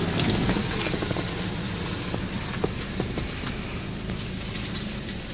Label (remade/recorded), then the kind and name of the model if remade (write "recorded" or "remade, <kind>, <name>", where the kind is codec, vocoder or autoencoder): recorded